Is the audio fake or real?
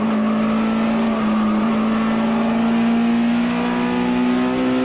real